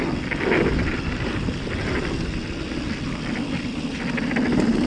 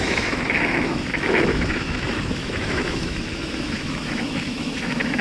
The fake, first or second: second